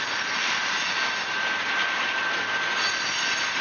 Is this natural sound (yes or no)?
yes